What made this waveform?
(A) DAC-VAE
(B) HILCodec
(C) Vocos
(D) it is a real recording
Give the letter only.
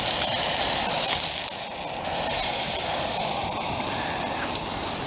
D